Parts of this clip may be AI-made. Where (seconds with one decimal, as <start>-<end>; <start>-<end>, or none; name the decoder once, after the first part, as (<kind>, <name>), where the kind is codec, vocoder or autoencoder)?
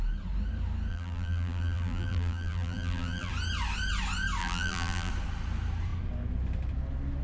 0.9-3.3 (vocoder, BigVGAN v2); 4.4-5.1